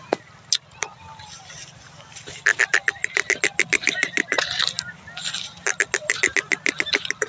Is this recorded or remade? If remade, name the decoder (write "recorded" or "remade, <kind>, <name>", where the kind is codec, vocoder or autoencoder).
recorded